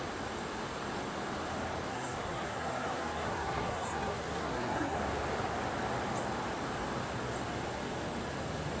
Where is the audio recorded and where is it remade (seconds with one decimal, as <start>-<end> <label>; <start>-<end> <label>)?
0.0-1.9 recorded; 1.9-5.0 remade; 5.0-8.8 recorded